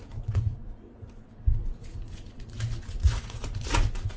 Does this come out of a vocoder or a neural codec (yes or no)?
yes